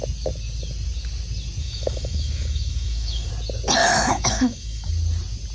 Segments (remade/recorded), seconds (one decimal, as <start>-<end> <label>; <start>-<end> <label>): 0.0-1.6 recorded; 1.6-3.3 remade; 3.3-3.8 recorded; 3.8-4.9 remade; 4.9-5.5 recorded